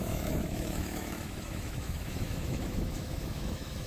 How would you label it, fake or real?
fake